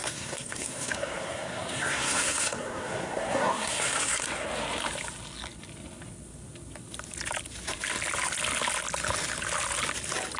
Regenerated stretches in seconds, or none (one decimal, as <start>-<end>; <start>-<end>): 0.0-4.3